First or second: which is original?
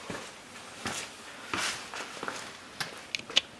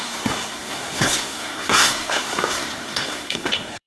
first